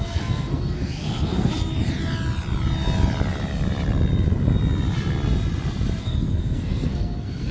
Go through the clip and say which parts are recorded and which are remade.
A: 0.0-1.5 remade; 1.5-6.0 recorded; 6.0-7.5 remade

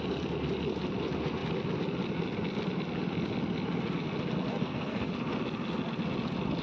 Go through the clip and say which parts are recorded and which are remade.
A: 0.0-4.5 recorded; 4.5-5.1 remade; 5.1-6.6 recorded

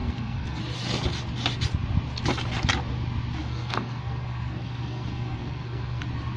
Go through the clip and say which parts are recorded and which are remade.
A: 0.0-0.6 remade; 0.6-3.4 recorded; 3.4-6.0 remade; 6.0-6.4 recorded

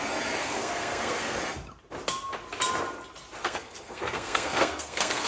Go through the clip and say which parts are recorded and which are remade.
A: 0.0-0.4 recorded; 0.4-1.4 remade; 1.4-3.4 recorded; 3.4-5.3 remade